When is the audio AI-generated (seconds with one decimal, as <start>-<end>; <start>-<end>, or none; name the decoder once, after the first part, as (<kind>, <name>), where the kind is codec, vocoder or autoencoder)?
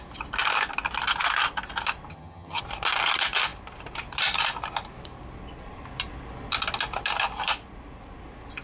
2.1-2.6 (vocoder, HiFi-GAN)